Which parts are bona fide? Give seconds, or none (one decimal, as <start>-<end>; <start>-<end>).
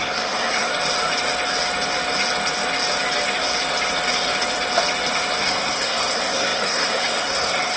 0.7-5.4